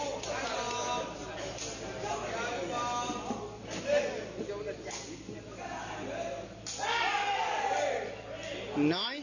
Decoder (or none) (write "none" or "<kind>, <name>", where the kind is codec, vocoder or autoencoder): none